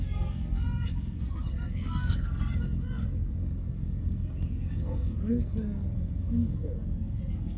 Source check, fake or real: fake